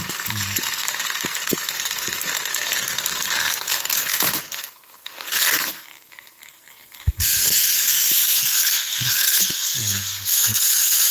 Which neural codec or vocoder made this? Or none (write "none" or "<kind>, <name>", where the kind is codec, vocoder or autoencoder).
codec, SNAC